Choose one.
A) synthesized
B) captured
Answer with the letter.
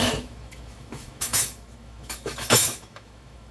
A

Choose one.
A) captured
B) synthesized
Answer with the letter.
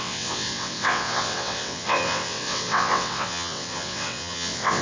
B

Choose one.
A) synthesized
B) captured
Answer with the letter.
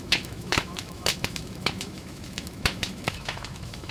A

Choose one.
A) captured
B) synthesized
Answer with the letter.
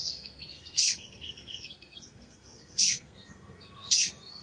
B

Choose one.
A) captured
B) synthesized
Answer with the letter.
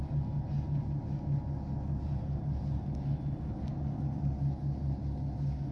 A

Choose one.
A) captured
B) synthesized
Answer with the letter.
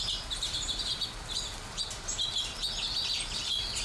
B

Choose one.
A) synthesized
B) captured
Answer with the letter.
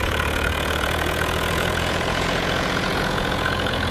A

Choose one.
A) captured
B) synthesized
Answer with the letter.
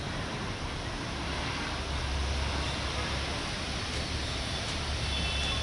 A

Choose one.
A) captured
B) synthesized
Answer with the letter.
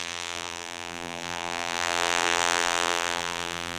B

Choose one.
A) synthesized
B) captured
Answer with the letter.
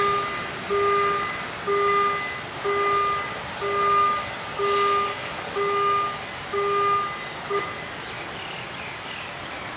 B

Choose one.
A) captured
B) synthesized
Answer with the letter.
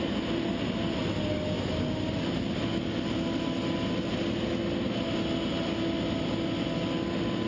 A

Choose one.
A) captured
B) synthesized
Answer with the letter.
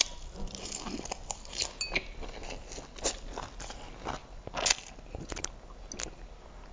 A